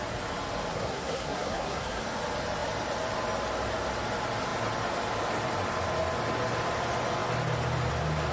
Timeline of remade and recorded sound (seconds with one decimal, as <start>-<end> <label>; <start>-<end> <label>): 0.0-0.7 recorded; 0.7-2.0 remade; 2.0-8.3 recorded